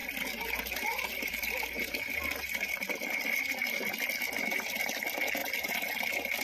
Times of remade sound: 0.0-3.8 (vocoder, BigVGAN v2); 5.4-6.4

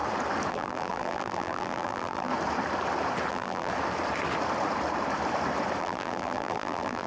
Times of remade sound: 0.5-2.3 (vocoder, BigVGAN v2); 3.3-3.7; 5.8-7.1

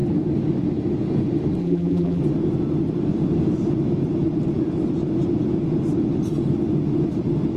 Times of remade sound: 1.6-2.2 (vocoder, BigVGAN v2)

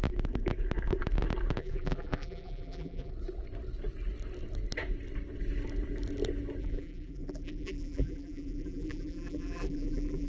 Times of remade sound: 1.6-3.1 (vocoder, BigVGAN v2); 6.6-10.3

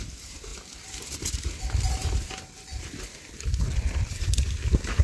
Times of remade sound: 0.5-1.2 (vocoder, BigVGAN v2); 2.0-5.0

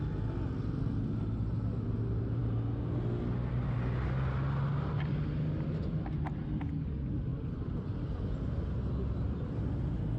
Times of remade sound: 7.3-8.6 (vocoder, BigVGAN v2)

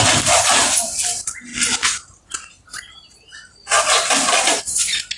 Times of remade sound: none

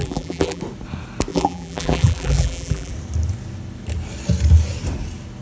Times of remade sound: 0.0-0.6 (vocoder, BigVGAN v2); 1.3-2.9